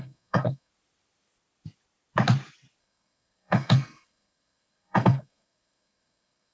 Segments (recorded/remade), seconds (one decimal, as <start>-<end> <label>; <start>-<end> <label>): 0.0-0.7 remade; 0.7-2.8 recorded; 2.8-6.5 remade